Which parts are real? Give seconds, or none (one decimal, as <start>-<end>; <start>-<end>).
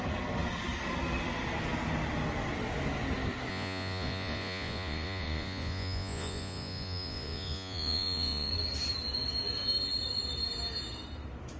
0.0-3.5; 8.5-11.6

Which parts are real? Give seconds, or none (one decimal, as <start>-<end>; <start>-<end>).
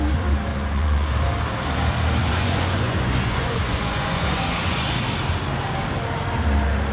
0.0-0.5; 1.1-2.2; 5.0-6.9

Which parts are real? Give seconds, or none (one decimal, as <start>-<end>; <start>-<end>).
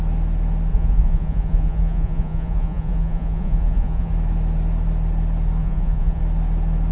0.0-0.7; 4.1-5.6; 6.2-6.9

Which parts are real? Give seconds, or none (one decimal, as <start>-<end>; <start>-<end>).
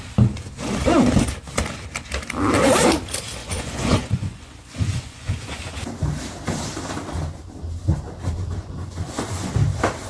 0.0-3.4; 5.7-8.6; 9.5-10.1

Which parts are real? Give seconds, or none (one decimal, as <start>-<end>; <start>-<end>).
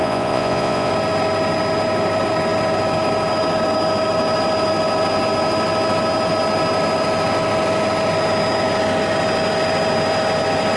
0.9-10.8